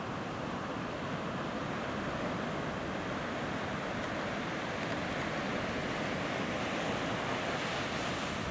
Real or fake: real